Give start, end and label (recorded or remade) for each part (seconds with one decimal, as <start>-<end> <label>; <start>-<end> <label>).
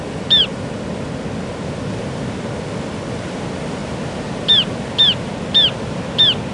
0.0-6.5 recorded